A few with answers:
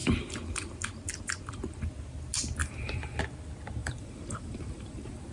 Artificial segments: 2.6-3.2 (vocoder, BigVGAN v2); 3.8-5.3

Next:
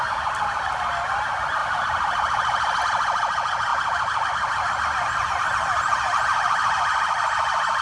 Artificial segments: 1.6-2.8 (vocoder, BigVGAN v2)